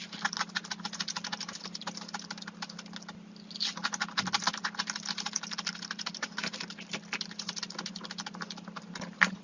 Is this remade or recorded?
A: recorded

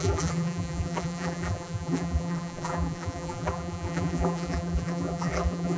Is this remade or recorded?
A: remade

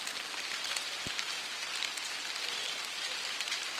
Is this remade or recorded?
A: recorded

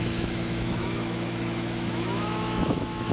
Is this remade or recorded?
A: remade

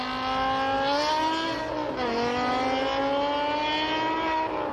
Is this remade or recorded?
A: recorded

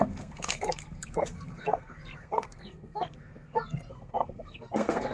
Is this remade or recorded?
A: remade